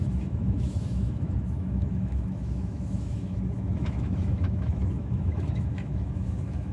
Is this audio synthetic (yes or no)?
yes